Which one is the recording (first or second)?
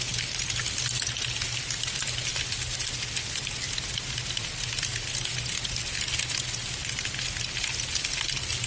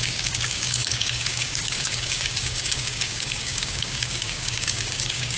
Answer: first